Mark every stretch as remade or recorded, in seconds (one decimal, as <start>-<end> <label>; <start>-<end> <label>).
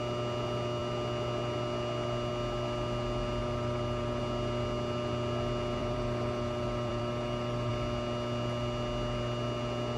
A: 0.0-3.4 recorded; 3.4-4.2 remade; 4.2-5.8 recorded; 5.8-7.7 remade; 7.7-10.0 recorded